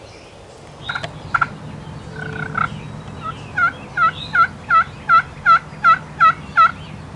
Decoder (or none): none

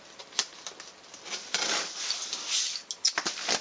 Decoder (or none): none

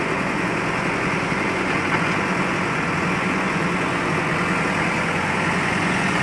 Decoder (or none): vocoder, Vocos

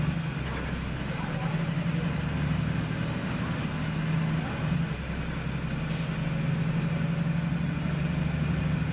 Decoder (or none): none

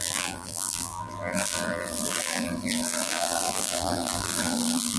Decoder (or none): vocoder, BigVGAN v2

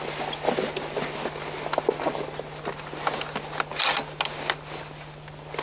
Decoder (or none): none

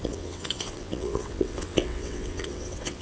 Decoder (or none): vocoder, WaveNeXt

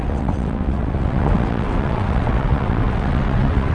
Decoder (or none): vocoder, WaveNeXt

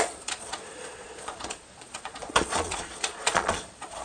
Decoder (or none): vocoder, Vocos